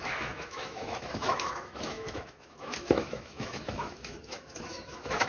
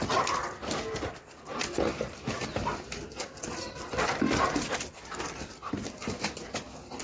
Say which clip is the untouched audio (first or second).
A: second